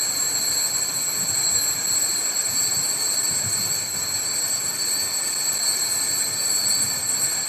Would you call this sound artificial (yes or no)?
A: no